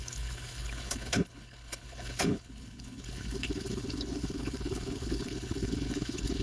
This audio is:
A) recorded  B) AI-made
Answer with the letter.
B